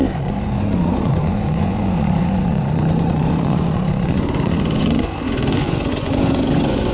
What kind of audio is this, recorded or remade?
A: remade